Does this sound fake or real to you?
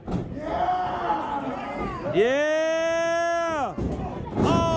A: real